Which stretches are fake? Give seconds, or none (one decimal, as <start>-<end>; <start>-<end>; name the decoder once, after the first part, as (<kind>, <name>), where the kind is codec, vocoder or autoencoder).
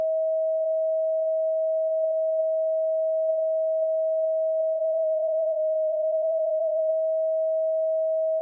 4.8-6.9 (vocoder, BigVGAN v2)